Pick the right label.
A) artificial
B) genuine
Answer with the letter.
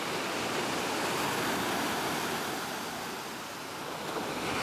B